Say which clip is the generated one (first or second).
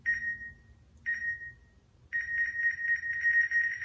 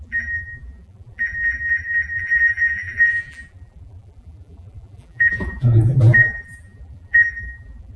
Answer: second